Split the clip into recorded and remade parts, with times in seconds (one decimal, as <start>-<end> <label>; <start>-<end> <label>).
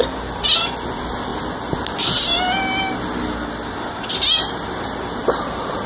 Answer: 0.0-5.9 recorded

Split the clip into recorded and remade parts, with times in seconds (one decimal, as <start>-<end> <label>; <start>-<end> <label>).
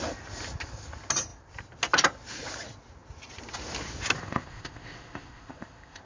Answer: 0.0-4.2 recorded; 4.2-6.0 remade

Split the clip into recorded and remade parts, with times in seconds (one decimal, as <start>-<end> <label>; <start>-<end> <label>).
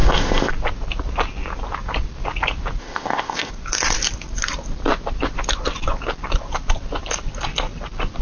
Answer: 0.0-0.5 remade; 0.5-2.8 recorded; 2.8-3.5 remade; 3.5-8.2 recorded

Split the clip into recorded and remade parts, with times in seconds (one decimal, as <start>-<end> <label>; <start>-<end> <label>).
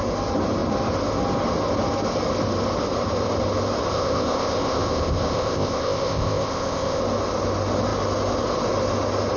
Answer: 0.0-3.9 recorded; 3.9-7.0 remade; 7.0-9.4 recorded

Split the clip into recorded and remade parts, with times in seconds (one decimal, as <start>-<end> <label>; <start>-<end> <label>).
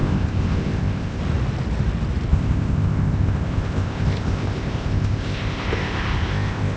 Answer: 0.0-1.2 remade; 1.2-2.3 recorded; 2.3-6.8 remade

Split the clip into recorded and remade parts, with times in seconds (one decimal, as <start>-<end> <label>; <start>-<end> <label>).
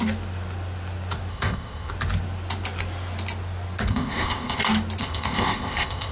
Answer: 0.0-1.3 recorded; 1.3-1.9 remade; 1.9-3.9 recorded; 3.9-4.6 remade; 4.6-5.0 recorded; 5.0-6.1 remade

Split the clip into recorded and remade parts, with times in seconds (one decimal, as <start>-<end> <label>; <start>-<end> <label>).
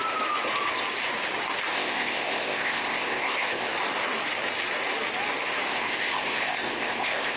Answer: 0.0-1.7 recorded; 1.7-3.7 remade; 3.7-5.7 recorded; 5.7-7.4 remade